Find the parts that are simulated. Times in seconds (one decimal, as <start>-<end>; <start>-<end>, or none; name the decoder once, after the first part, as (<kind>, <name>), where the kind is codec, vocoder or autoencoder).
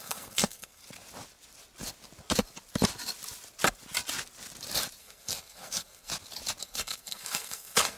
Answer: 0.0-0.8 (codec, SNAC); 5.0-6.1; 6.6-8.0